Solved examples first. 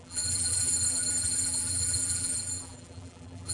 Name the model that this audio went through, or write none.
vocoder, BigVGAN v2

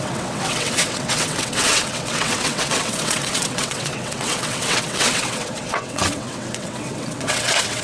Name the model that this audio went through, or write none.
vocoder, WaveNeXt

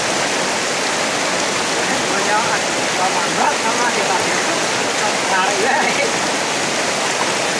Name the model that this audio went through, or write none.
none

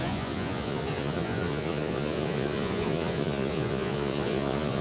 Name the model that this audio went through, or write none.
vocoder, Vocos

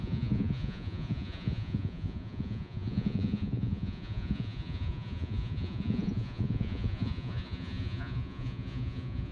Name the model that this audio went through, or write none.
vocoder, Vocos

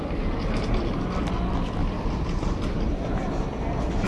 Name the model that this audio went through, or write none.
none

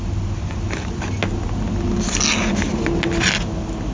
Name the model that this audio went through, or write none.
none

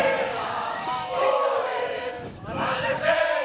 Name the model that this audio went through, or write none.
codec, DAC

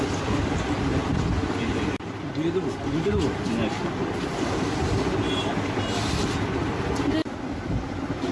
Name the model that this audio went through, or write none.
none